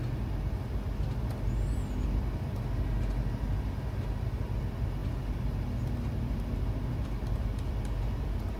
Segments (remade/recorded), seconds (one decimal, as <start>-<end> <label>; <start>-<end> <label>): 0.0-8.6 recorded